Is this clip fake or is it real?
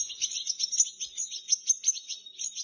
real